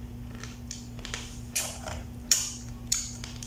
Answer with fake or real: fake